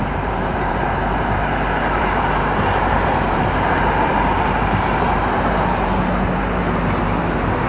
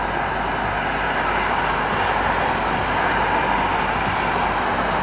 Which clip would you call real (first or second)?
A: second